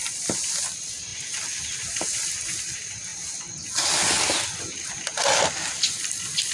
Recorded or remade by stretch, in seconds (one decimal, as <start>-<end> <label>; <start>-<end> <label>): 0.0-6.5 recorded